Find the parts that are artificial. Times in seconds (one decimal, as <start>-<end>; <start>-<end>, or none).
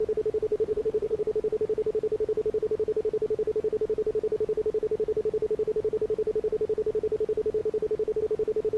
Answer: 0.5-1.2